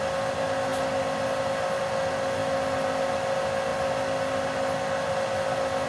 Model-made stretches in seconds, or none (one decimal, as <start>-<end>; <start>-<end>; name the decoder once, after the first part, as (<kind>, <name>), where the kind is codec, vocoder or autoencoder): none